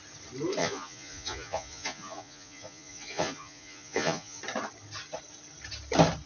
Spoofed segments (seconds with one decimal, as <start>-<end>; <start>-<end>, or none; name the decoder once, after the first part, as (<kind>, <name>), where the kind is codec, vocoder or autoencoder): 0.6-4.4 (vocoder, Vocos)